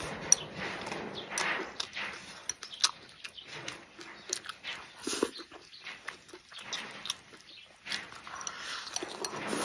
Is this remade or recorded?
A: recorded